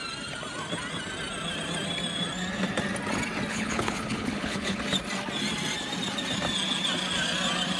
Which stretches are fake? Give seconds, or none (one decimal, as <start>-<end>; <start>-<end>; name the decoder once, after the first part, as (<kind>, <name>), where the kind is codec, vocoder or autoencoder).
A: 3.5-4.8 (codec, HILCodec)